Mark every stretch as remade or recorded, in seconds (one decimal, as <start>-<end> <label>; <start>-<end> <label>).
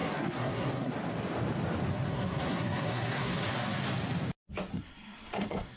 0.0-0.9 remade; 0.9-1.9 recorded; 1.9-3.8 remade; 3.8-4.7 recorded; 4.7-5.8 remade